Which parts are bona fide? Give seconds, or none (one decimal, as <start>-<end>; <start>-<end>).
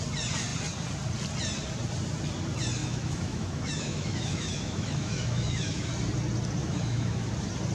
0.0-2.8; 5.9-6.6; 7.3-7.7